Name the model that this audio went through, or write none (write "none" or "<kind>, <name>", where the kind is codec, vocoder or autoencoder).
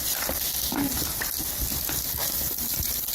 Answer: none